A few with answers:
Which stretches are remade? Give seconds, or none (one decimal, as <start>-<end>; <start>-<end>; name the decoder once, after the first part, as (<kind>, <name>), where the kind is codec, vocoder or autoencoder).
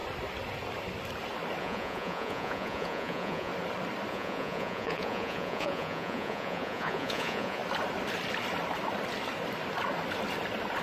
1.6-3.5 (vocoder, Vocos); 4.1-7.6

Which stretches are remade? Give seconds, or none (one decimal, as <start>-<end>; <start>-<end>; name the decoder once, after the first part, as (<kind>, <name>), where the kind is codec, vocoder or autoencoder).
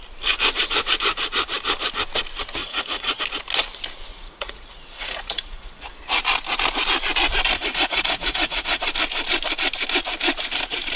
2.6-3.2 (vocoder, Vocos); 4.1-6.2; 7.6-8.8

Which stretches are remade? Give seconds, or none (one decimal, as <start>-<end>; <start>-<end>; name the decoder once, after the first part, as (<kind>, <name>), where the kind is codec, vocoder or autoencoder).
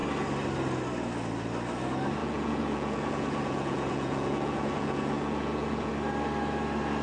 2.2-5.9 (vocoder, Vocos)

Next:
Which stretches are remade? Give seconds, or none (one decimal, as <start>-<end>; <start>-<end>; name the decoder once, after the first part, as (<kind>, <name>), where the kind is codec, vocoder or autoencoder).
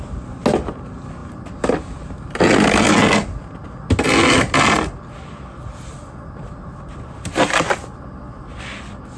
none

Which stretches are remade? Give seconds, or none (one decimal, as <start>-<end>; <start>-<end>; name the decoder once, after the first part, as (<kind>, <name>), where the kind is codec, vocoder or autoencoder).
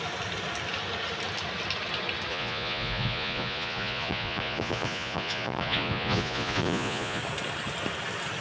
2.3-7.2 (vocoder, Vocos)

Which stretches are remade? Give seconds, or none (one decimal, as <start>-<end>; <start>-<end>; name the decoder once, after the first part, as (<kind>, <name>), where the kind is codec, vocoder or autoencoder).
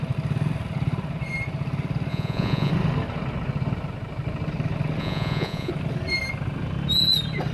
2.1-2.7 (vocoder, Vocos); 5.0-5.7